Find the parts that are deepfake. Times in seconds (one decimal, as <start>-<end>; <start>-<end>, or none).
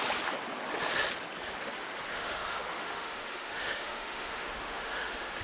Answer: 2.1-5.4